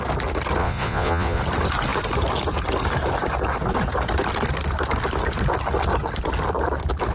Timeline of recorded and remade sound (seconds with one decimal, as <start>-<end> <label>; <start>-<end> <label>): 0.0-0.6 recorded; 0.6-1.4 remade; 1.4-7.1 recorded